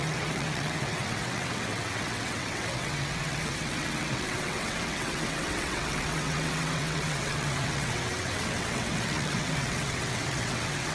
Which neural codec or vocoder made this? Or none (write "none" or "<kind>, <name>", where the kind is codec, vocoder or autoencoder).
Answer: vocoder, WaveNeXt